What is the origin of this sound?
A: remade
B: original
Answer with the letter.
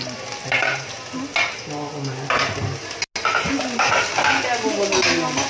B